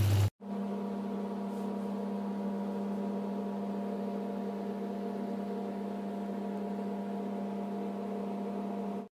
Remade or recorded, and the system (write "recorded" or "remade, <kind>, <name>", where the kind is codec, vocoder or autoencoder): recorded